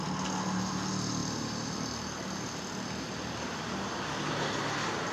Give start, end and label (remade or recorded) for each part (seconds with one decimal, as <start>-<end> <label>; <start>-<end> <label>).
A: 0.0-5.1 recorded